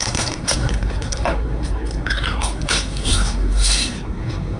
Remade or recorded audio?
remade